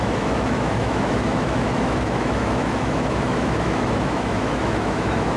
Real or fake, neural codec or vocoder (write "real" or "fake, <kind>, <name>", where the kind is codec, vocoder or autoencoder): fake, autoencoder, DAC-VAE